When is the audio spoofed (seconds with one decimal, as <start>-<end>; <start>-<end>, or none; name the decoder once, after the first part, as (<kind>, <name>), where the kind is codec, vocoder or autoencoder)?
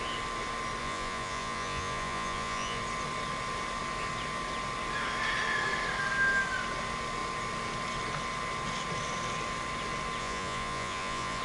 0.8-2.8 (vocoder, Vocos); 10.2-11.4